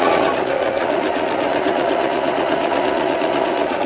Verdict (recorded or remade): remade